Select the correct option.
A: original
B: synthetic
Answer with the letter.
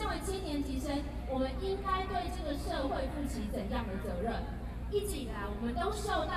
A